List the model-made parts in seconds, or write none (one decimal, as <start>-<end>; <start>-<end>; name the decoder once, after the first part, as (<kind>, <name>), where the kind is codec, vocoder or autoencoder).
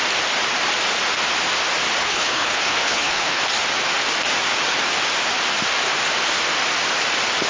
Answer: 2.0-3.4 (codec, HILCodec)